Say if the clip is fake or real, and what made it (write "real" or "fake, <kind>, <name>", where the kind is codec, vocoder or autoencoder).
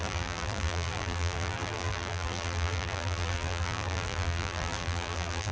fake, vocoder, BigVGAN v2